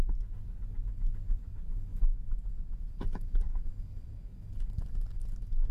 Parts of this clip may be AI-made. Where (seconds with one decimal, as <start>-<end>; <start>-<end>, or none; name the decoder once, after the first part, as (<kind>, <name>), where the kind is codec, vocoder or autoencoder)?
none